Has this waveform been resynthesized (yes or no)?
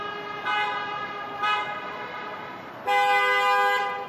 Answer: no